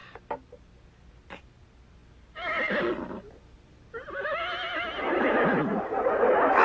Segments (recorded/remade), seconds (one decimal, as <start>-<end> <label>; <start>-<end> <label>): 0.0-6.6 recorded